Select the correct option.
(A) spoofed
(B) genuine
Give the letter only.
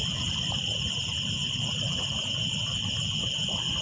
A